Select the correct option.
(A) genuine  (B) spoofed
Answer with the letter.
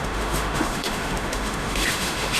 B